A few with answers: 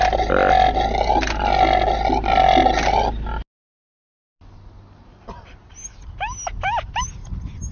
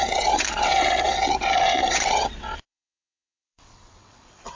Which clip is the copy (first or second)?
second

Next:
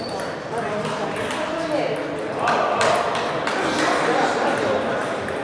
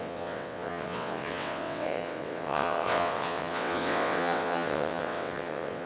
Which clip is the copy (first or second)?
second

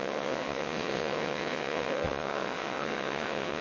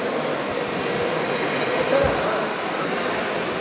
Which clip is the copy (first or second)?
first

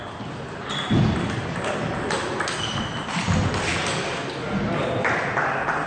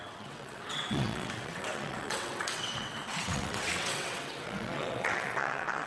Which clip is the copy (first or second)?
second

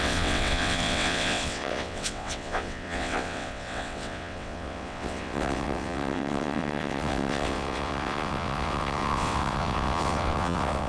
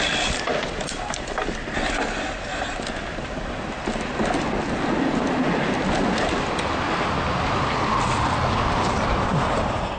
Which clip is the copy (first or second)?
first